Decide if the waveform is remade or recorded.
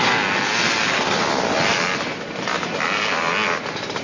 recorded